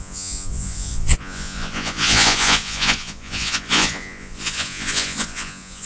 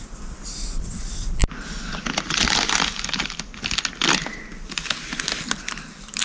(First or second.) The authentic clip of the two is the second